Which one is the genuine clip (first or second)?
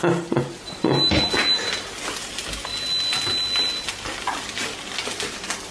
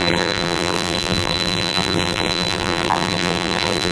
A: first